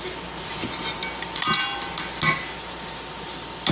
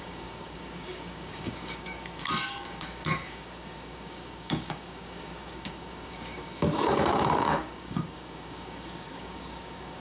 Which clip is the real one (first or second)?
first